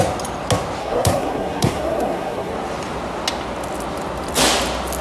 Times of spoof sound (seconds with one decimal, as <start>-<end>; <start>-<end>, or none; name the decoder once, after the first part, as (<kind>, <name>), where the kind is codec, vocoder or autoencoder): 0.8-2.5 (codec, SNAC)